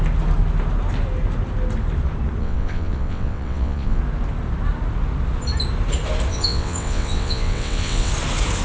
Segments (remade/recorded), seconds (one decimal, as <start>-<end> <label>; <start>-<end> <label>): 0.0-2.4 recorded; 2.4-4.0 remade; 4.0-6.3 recorded; 6.3-8.1 remade; 8.1-8.6 recorded